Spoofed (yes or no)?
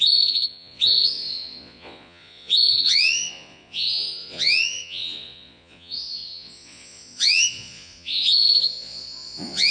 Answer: yes